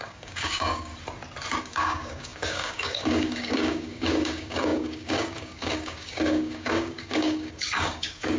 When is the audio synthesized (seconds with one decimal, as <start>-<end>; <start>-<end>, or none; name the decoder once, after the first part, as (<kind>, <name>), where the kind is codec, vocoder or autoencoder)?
0.0-0.9 (codec, DAC); 1.6-8.4